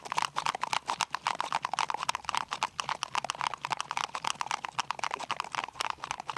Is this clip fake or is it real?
real